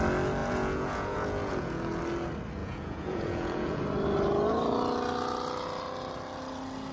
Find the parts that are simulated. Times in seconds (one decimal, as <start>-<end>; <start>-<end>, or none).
0.4-2.0; 2.6-3.8